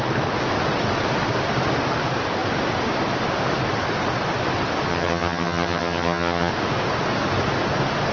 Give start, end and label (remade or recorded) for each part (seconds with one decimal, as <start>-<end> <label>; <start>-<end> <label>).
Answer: 0.0-4.9 recorded; 4.9-6.5 remade; 6.5-8.1 recorded